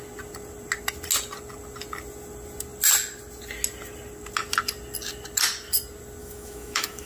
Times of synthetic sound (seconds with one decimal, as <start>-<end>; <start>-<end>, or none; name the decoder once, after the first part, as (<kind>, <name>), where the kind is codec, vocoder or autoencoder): 6.2-7.1 (autoencoder, DAC-VAE)